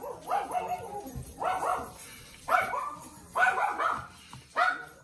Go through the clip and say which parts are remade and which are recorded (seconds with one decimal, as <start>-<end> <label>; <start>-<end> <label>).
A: 0.0-1.7 recorded; 1.7-3.6 remade; 3.6-5.0 recorded